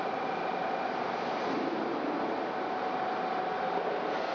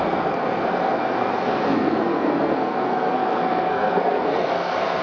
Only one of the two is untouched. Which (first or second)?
first